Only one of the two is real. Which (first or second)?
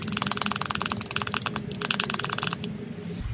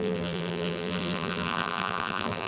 first